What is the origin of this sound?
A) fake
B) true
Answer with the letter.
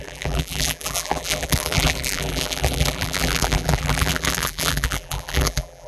A